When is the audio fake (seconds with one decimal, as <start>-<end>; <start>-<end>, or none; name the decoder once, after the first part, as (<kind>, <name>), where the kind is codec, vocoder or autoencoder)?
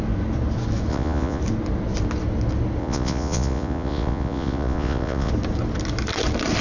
0.9-1.4 (vocoder, Vocos); 2.8-5.3